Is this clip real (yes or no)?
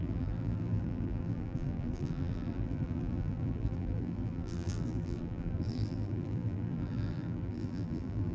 no